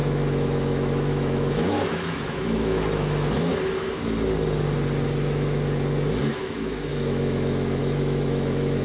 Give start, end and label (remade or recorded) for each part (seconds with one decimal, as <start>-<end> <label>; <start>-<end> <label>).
0.0-3.5 remade; 3.5-6.3 recorded; 6.3-8.8 remade